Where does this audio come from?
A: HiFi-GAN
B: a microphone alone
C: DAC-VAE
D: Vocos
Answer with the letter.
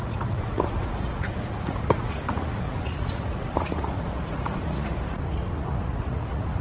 D